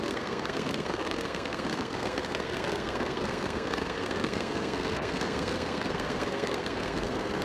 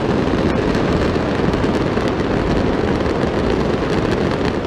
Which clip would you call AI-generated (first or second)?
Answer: first